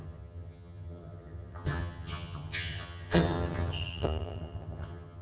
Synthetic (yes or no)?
yes